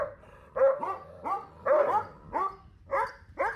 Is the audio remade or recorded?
recorded